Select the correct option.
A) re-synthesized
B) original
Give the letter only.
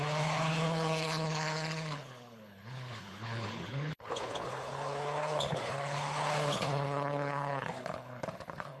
A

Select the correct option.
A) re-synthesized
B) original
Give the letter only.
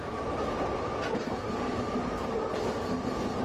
B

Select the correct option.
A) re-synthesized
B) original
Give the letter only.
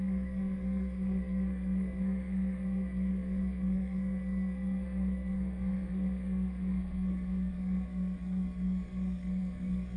A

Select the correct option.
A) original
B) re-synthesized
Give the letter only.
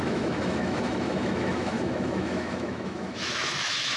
B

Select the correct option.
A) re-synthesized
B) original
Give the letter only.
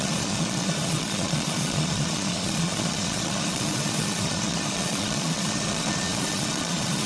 A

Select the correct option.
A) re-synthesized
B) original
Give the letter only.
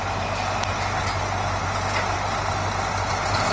B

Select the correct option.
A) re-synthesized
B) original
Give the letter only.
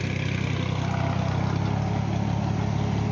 B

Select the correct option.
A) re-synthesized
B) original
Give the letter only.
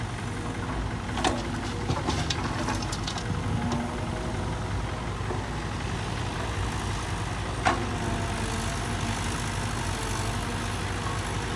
B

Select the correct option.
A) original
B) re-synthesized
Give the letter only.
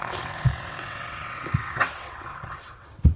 B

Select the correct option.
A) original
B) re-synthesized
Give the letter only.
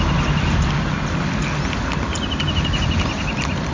A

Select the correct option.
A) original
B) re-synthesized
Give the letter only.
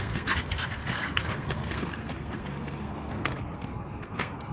B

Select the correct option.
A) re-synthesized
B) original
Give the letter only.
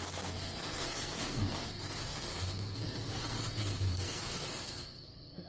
A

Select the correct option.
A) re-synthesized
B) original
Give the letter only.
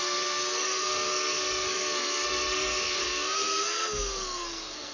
A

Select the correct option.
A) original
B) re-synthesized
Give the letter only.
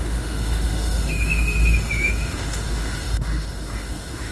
B